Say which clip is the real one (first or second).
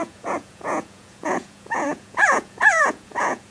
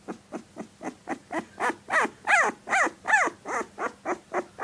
second